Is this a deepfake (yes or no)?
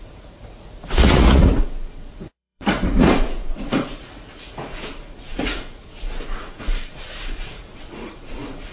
yes